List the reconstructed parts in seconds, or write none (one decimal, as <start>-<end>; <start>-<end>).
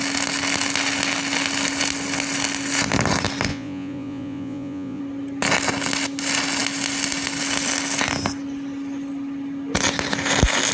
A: 3.5-5.0